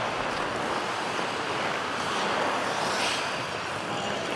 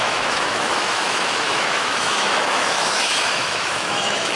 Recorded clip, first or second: first